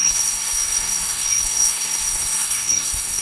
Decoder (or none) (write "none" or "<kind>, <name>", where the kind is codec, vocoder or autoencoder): codec, SNAC